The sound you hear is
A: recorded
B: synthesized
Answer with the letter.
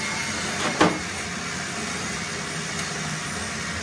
A